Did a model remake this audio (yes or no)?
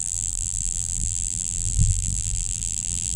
yes